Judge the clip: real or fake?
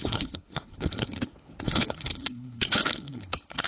fake